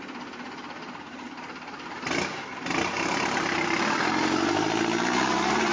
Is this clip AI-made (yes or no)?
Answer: yes